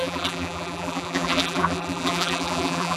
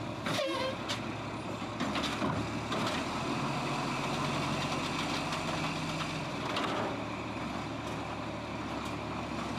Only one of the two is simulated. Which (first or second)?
first